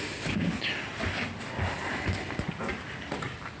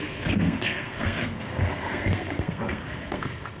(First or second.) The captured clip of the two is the first